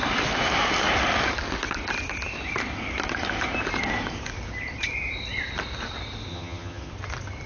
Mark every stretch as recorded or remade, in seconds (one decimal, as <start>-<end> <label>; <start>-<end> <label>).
0.0-6.3 recorded; 6.3-6.9 remade; 6.9-7.5 recorded